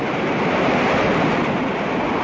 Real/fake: fake